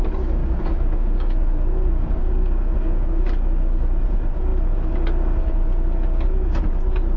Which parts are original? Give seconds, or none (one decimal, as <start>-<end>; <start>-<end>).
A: 0.0-0.4; 3.2-7.2